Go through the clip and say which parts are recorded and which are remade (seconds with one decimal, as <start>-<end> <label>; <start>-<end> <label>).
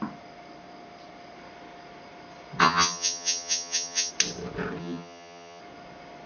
0.0-2.6 recorded; 2.6-4.1 remade; 4.1-4.8 recorded; 4.8-5.6 remade; 5.6-6.3 recorded